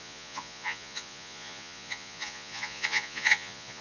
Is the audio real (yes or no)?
no